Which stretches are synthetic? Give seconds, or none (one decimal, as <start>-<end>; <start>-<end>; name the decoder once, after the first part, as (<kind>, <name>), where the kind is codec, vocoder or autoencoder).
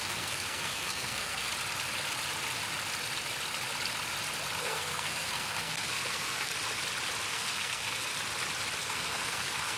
0.0-1.5 (codec, SNAC); 4.6-6.5; 7.3-8.1; 8.8-9.8